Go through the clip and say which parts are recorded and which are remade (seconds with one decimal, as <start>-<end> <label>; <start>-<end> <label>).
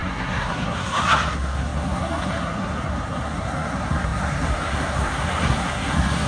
0.0-6.3 remade